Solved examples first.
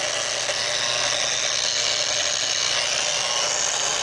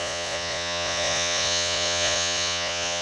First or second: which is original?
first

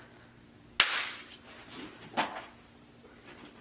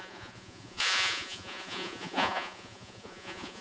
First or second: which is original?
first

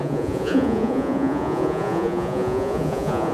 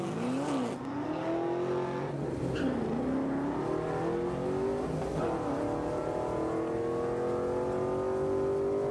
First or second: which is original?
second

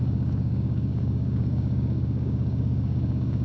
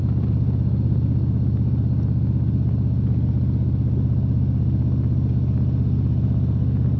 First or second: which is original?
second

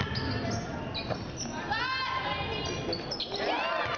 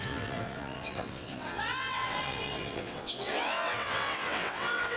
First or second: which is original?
first